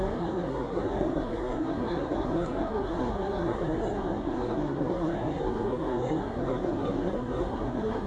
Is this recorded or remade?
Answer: remade